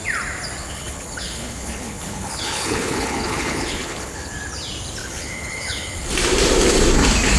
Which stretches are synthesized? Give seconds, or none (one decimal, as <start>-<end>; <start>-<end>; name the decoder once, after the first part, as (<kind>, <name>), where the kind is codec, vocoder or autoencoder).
0.6-4.3 (codec, HILCodec); 5.0-6.1